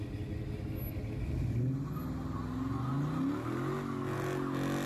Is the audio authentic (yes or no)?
yes